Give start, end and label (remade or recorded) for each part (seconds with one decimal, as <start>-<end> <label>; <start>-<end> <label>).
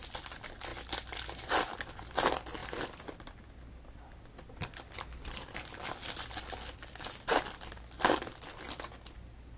0.0-9.6 recorded